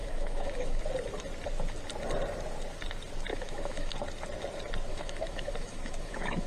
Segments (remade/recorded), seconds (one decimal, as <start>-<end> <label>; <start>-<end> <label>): 0.0-0.8 remade; 0.8-3.3 recorded; 3.3-3.9 remade; 3.9-4.9 recorded; 4.9-6.5 remade